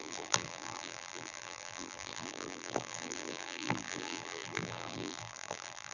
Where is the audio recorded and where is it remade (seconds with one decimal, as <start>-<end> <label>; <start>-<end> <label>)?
0.0-5.9 remade